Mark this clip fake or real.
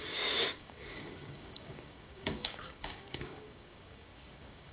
fake